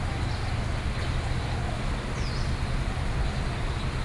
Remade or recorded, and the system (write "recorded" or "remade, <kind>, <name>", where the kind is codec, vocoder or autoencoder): recorded